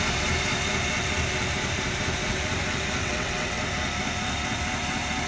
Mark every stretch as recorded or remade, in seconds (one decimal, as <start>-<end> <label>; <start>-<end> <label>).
0.0-3.0 recorded; 3.0-3.6 remade; 3.6-5.3 recorded

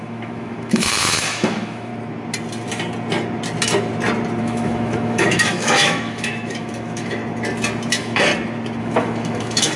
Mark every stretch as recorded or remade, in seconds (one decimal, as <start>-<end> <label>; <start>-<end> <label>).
0.0-1.9 remade; 1.9-4.4 recorded; 4.4-7.2 remade; 7.2-7.9 recorded; 7.9-8.3 remade; 8.3-8.8 recorded; 8.8-9.8 remade

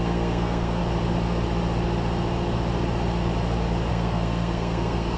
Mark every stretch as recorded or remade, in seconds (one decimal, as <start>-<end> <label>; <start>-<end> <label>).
0.0-0.8 remade; 0.8-3.9 recorded; 3.9-5.2 remade

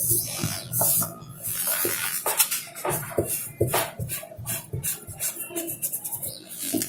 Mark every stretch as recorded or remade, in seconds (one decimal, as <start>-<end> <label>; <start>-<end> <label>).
0.0-2.2 remade; 2.2-6.3 recorded; 6.3-6.9 remade

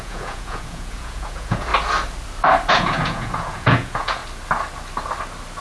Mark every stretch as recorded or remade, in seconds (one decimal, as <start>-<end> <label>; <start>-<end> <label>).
0.0-1.7 remade; 1.7-2.7 recorded; 2.7-4.2 remade; 4.2-5.6 recorded

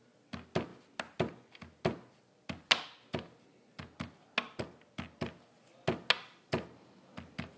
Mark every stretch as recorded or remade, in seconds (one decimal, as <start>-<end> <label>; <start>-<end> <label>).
0.0-7.6 recorded

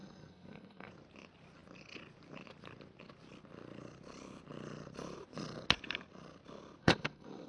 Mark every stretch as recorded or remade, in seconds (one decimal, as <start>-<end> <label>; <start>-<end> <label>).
0.0-0.9 remade; 0.9-6.8 recorded; 6.8-7.5 remade